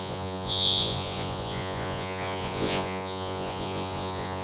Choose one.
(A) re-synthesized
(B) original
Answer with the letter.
A